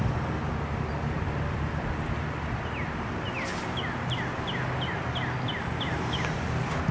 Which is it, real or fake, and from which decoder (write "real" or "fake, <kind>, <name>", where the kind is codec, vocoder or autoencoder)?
real